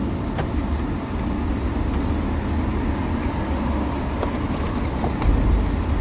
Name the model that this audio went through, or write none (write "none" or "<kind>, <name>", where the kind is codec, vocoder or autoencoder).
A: none